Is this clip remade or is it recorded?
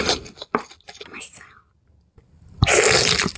recorded